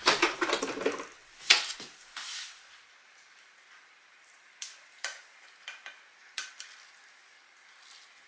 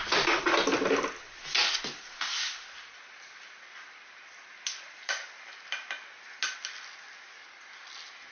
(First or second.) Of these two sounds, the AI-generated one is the first